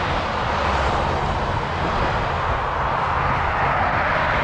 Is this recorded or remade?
recorded